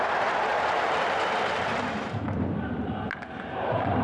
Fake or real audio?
fake